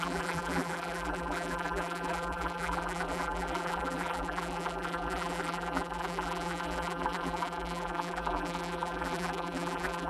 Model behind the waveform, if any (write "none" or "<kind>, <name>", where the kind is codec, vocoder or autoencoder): vocoder, BigVGAN v2